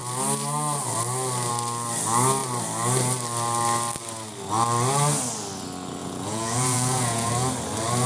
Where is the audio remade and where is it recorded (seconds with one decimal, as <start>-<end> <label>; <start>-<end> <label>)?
0.0-6.0 recorded; 6.0-7.3 remade; 7.3-8.1 recorded